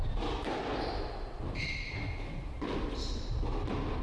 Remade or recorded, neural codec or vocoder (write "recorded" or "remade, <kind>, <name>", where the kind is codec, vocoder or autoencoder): recorded